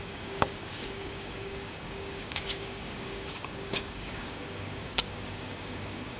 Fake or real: fake